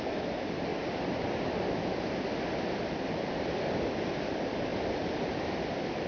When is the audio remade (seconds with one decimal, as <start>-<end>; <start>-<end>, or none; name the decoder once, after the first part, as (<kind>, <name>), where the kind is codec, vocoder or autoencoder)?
0.7-1.7 (vocoder, BigVGAN v2); 4.7-5.3